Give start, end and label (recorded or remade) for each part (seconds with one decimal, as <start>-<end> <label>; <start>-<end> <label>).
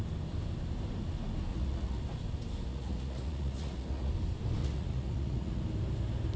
0.0-1.5 recorded; 1.5-2.0 remade; 2.0-2.7 recorded; 2.7-4.1 remade; 4.1-4.6 recorded; 4.6-5.6 remade; 5.6-6.4 recorded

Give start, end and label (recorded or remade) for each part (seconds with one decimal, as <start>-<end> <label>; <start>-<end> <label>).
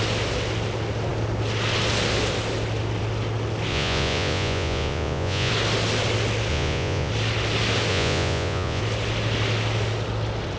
0.0-3.7 recorded; 3.7-5.5 remade; 5.5-6.5 recorded; 6.5-7.1 remade; 7.1-7.9 recorded; 7.9-8.8 remade; 8.8-10.6 recorded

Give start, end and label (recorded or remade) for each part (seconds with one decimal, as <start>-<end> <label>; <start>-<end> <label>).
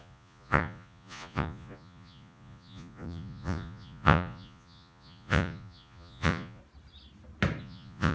0.0-6.6 remade; 6.6-7.6 recorded; 7.6-8.1 remade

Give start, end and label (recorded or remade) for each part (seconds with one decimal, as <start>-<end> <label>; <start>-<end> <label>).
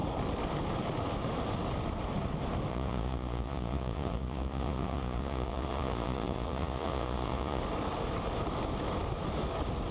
0.0-2.7 recorded; 2.7-7.6 remade; 7.6-9.9 recorded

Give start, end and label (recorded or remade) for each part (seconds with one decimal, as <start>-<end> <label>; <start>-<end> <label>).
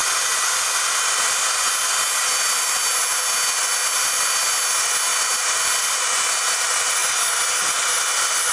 0.0-8.5 recorded